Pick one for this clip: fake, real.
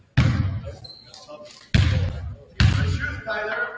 real